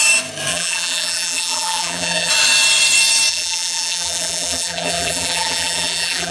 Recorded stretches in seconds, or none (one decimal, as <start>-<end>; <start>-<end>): 0.0-0.5; 2.3-3.3

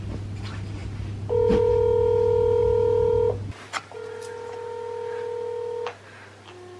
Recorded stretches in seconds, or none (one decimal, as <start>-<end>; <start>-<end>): 0.0-6.8

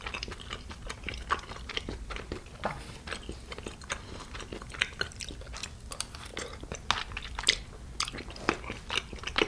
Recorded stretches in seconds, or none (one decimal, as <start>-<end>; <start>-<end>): 6.3-8.9